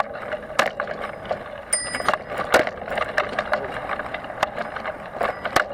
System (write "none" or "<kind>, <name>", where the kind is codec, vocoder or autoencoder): none